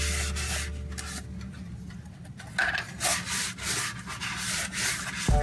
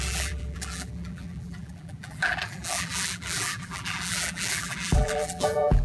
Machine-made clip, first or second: second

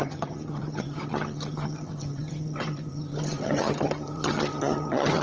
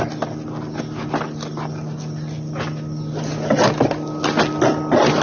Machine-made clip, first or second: first